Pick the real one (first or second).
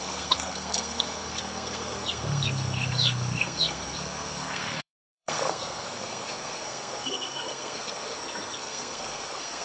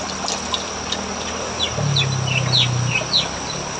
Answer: second